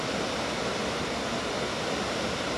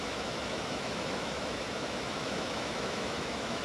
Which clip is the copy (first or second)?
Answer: second